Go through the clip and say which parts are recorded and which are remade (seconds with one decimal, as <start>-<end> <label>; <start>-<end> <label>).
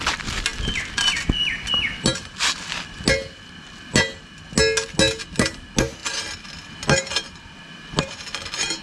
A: 0.0-8.8 recorded